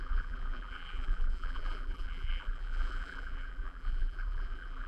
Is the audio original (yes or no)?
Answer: no